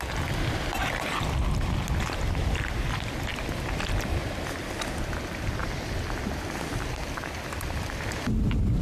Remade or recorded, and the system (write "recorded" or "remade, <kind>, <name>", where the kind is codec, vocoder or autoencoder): recorded